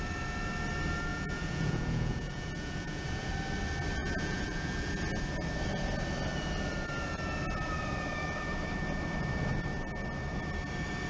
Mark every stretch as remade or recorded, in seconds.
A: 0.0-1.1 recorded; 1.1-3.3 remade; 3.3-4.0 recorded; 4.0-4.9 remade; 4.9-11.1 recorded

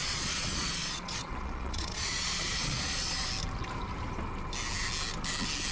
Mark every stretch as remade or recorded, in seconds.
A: 0.0-3.3 remade; 3.3-5.7 recorded

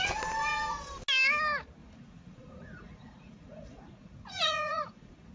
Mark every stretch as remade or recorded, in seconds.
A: 0.0-1.8 recorded; 1.8-5.3 remade

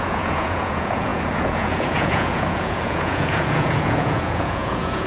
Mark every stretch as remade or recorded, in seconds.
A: 0.0-5.1 remade

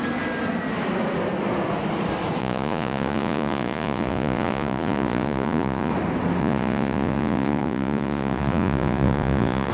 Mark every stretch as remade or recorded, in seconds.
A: 0.0-2.4 recorded; 2.4-5.9 remade; 5.9-6.4 recorded; 6.4-9.7 remade

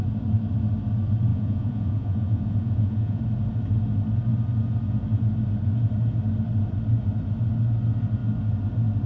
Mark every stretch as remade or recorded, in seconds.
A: 0.0-1.3 recorded; 1.3-3.2 remade; 3.2-9.1 recorded

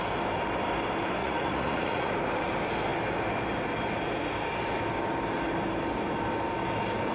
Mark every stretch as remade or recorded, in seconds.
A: 0.0-1.2 recorded; 1.2-2.1 remade; 2.1-7.1 recorded

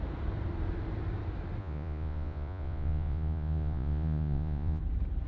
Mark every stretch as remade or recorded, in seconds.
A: 0.0-1.6 recorded; 1.6-4.8 remade; 4.8-5.3 recorded